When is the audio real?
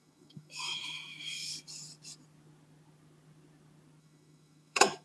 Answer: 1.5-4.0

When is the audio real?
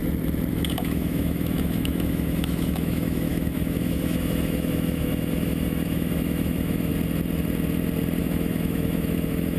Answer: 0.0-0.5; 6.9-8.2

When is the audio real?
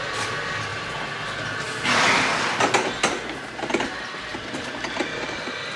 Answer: 0.0-5.8